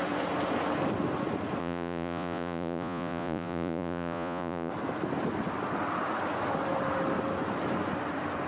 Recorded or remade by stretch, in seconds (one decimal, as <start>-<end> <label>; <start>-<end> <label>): 0.0-1.6 recorded; 1.6-4.7 remade; 4.7-8.5 recorded